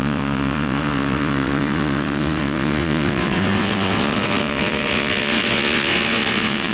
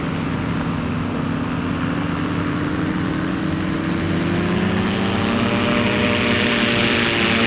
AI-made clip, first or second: first